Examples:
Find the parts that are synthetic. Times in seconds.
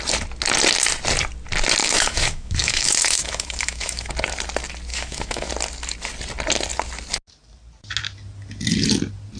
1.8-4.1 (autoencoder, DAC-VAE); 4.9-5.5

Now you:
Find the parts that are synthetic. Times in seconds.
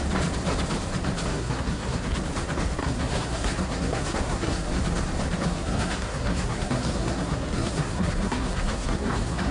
1.3-2.2 (codec, SNAC); 2.8-4.8; 5.4-9.5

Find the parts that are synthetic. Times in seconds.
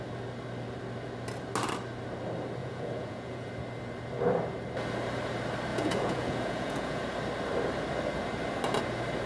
2.6-3.5 (vocoder, Vocos); 5.7-7.0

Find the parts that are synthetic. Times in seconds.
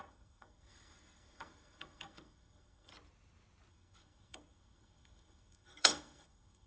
0.0-2.9 (codec, SNAC); 3.7-6.7